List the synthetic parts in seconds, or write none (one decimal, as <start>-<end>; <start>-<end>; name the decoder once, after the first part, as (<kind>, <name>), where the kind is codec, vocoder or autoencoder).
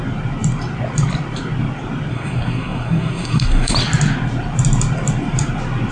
2.1-3.7 (codec, SNAC)